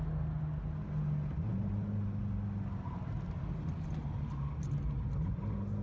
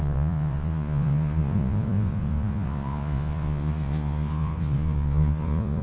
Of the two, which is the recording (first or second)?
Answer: first